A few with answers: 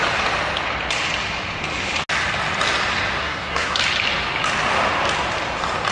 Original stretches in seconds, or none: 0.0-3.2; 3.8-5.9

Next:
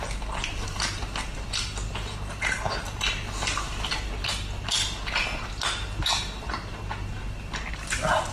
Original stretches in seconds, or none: 0.0-8.3